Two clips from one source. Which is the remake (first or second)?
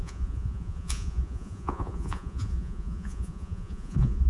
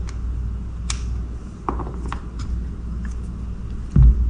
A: first